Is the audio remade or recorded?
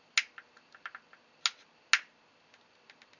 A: recorded